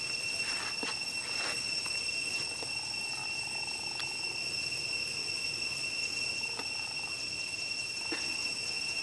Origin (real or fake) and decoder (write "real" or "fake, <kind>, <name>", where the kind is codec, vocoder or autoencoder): real